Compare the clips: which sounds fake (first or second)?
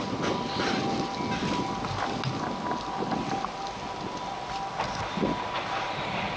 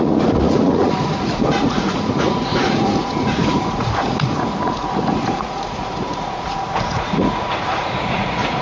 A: second